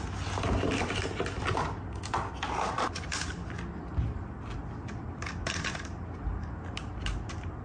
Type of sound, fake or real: real